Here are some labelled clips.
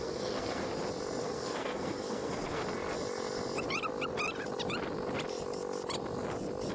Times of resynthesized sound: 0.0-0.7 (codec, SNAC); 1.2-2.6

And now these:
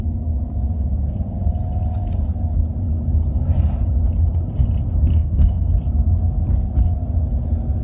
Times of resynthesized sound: 5.2-5.7 (codec, SNAC)